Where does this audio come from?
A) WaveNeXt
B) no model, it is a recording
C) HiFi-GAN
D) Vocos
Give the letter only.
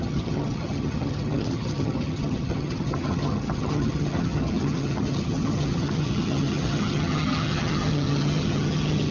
C